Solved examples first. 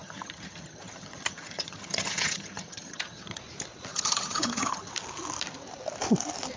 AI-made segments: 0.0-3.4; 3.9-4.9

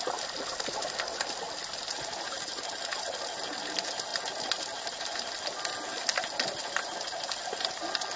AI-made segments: none

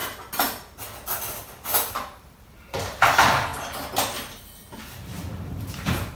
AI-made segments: 1.9-3.5; 4.8-6.1

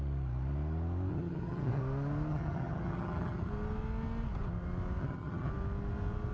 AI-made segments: 1.1-1.8; 2.3-3.5; 5.0-5.5

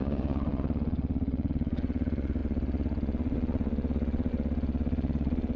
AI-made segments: 0.0-5.6

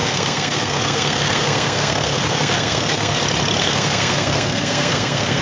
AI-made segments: 0.0-3.2; 3.6-5.4